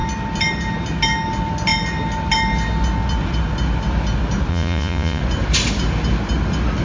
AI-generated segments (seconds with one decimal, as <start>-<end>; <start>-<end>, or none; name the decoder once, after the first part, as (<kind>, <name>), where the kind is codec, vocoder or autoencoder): 4.5-5.2 (vocoder, Vocos)